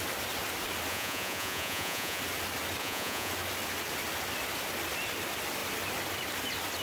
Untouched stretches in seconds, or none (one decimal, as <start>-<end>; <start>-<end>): 0.0-0.9; 2.2-2.8; 3.3-6.8